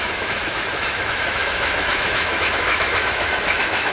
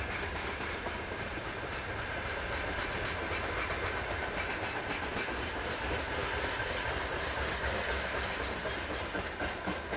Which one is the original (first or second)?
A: second